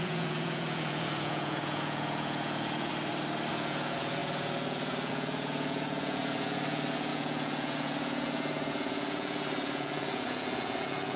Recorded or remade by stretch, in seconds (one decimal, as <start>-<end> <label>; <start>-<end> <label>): 0.0-2.9 remade; 2.9-3.5 recorded; 3.5-11.2 remade